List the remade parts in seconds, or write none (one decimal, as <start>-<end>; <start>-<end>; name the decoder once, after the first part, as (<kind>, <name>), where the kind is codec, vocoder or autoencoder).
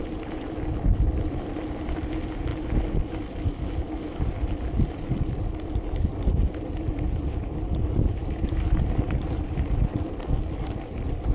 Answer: 0.9-2.1 (vocoder, BigVGAN v2); 8.2-9.8